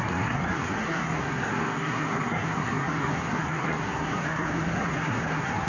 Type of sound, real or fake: fake